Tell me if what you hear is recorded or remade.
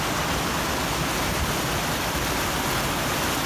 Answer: recorded